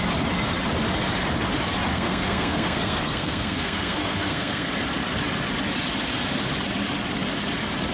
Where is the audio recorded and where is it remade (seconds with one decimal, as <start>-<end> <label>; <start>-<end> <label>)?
0.0-1.9 recorded; 1.9-4.7 remade; 4.7-7.9 recorded